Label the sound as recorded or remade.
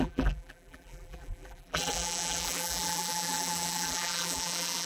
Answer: remade